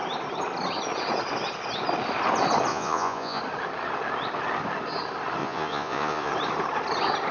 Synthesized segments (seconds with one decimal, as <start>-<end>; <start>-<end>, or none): 2.7-3.4; 5.4-6.3